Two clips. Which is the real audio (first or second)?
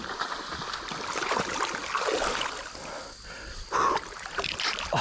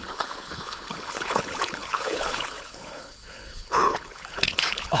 first